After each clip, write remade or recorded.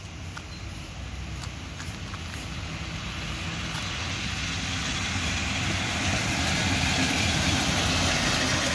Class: recorded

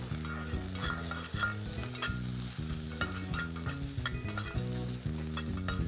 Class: recorded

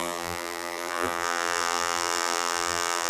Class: remade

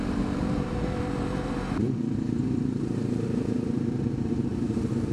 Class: remade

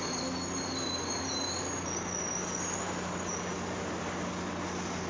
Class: recorded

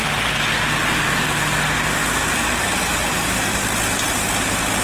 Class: recorded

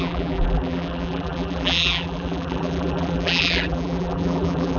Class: remade